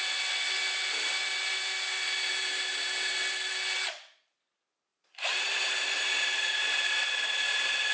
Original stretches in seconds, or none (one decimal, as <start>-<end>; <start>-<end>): 0.0-4.9; 6.9-7.9